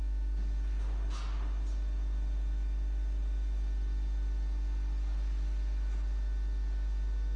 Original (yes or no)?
yes